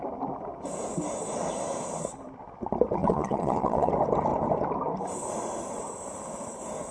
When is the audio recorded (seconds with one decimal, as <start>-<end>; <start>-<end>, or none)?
0.0-3.0; 3.9-6.9